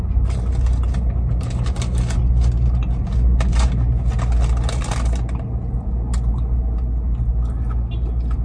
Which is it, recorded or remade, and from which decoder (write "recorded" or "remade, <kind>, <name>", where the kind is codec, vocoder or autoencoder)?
recorded